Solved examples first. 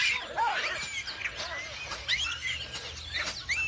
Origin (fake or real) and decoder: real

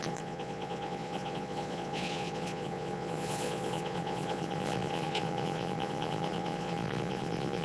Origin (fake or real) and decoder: fake, vocoder, Vocos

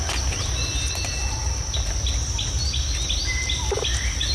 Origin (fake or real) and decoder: real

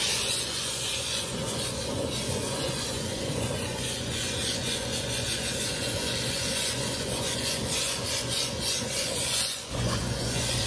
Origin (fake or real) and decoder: fake, vocoder, Vocos